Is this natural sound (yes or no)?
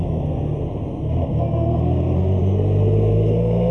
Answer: no